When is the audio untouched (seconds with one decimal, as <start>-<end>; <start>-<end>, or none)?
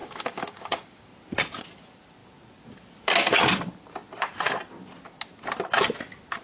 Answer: 1.1-6.4